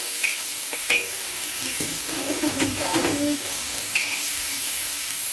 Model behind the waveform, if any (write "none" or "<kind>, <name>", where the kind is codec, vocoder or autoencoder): codec, DAC